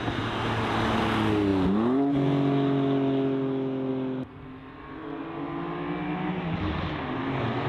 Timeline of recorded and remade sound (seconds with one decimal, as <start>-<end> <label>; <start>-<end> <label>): 0.0-7.7 recorded